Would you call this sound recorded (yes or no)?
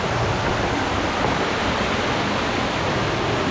yes